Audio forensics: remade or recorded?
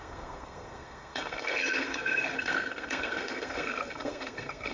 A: remade